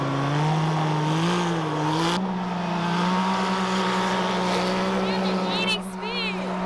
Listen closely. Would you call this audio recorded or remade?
recorded